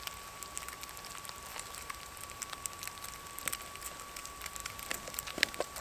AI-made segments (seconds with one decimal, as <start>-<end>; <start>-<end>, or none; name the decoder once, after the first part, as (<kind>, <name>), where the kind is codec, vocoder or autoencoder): 1.5-3.4 (vocoder, BigVGAN v2); 4.6-5.8